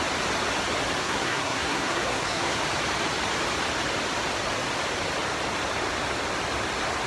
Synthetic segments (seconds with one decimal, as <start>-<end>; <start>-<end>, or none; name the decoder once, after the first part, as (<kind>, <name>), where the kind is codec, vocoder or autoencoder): 1.0-2.6 (codec, SNAC)